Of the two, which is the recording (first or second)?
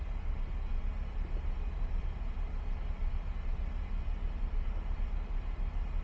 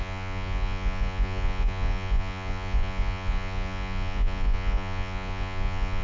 first